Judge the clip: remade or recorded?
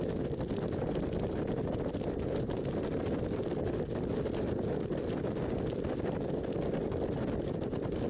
recorded